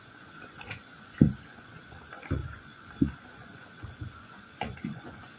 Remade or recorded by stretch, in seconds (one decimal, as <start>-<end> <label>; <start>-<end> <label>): 0.0-5.4 remade